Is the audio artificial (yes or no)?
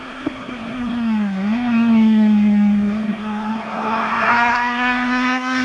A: yes